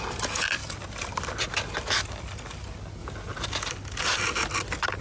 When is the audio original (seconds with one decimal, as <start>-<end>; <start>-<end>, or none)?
0.0-5.0